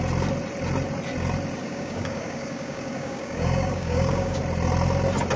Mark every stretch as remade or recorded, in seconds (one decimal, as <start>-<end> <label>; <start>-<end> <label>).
0.0-1.6 recorded; 1.6-4.4 remade; 4.4-5.4 recorded